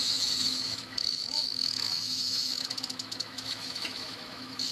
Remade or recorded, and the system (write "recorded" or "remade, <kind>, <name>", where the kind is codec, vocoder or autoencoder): remade, autoencoder, DAC-VAE